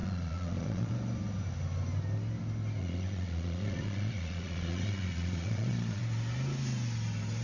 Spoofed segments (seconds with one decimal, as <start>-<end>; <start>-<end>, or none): 0.0-0.9; 2.8-6.0